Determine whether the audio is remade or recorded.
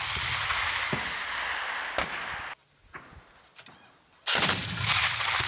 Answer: recorded